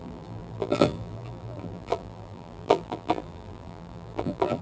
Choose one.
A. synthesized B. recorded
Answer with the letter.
A